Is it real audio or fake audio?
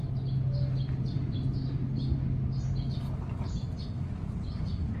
real